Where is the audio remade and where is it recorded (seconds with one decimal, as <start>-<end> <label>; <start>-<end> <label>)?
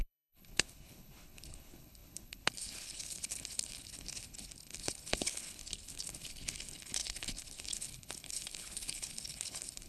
0.0-9.9 remade